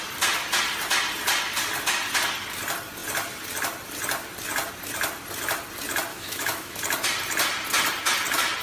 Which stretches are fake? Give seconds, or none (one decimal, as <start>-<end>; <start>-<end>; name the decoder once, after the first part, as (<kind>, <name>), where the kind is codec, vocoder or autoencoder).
6.1-6.8 (autoencoder, DAC-VAE)